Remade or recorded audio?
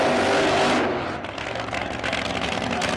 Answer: recorded